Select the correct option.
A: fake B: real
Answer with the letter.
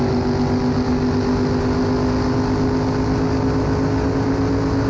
B